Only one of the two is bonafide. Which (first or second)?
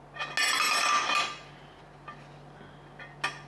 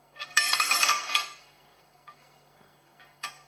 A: first